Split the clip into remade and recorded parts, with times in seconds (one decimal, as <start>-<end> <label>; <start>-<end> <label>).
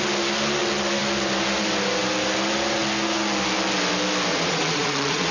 0.0-4.3 recorded; 4.3-5.3 remade